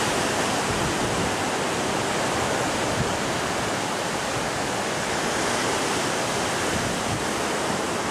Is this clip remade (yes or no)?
no